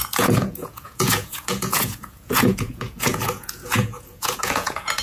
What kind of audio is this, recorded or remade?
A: remade